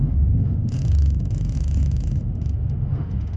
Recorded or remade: remade